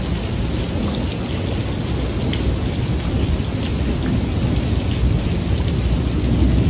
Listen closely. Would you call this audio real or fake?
real